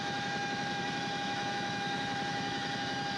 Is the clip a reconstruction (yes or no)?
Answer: yes